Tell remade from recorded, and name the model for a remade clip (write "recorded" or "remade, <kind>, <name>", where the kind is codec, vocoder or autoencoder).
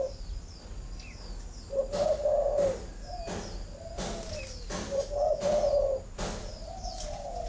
recorded